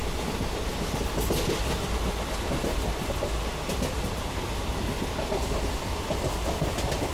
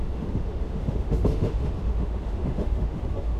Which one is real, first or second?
first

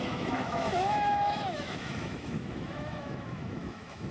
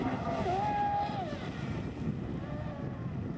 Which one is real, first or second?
second